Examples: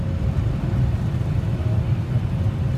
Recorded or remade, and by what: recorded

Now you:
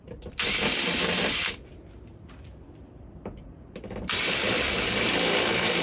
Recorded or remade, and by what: remade, vocoder, BigVGAN v2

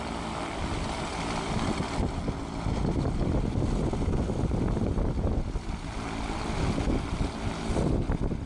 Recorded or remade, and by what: recorded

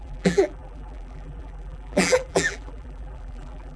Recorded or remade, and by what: remade, vocoder, BigVGAN v2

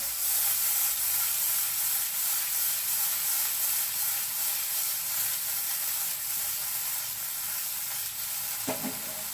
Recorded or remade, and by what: recorded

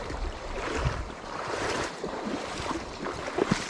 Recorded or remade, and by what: remade, vocoder, BigVGAN v2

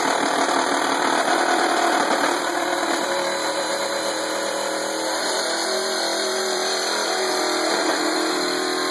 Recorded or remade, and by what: remade, vocoder, BigVGAN v2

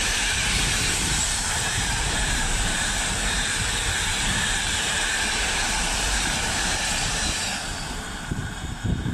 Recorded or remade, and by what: remade, vocoder, BigVGAN v2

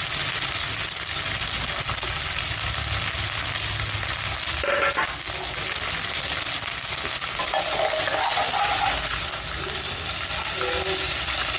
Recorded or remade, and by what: recorded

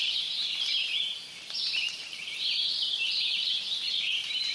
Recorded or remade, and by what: remade, vocoder, BigVGAN v2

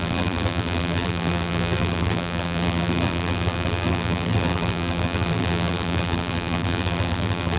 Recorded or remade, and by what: remade, vocoder, BigVGAN v2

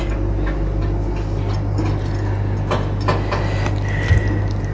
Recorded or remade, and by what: recorded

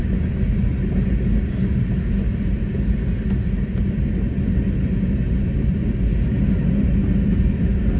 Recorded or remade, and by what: recorded